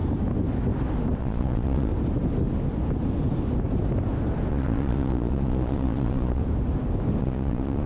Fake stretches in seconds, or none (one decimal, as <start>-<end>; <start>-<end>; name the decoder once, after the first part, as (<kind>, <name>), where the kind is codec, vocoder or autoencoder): 1.2-1.9 (vocoder, Vocos); 4.5-6.4; 7.2-7.9